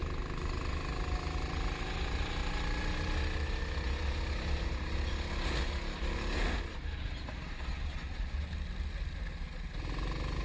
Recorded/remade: recorded